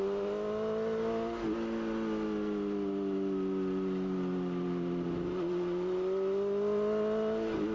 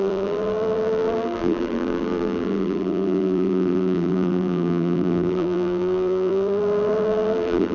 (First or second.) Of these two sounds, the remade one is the second